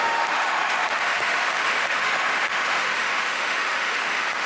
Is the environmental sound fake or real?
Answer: fake